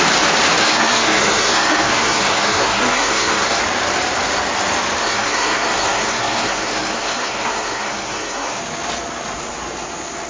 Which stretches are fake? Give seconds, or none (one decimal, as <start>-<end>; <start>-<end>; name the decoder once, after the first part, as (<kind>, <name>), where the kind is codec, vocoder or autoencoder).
0.6-3.6 (codec, SNAC); 5.0-8.6